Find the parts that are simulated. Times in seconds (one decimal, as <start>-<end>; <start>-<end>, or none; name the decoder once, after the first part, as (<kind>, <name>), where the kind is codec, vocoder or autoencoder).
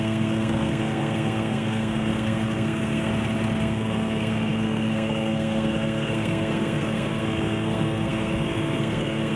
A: 0.0-3.1 (codec, SNAC); 3.6-9.4